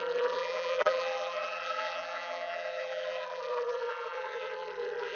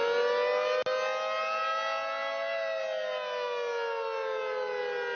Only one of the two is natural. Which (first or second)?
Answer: second